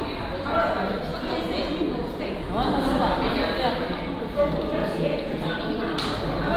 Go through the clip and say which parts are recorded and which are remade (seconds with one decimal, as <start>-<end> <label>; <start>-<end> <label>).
0.0-1.1 recorded; 1.1-2.2 remade; 2.2-4.8 recorded; 4.8-5.4 remade; 5.4-6.6 recorded